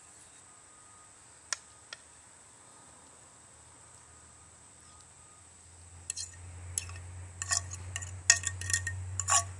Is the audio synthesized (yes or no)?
no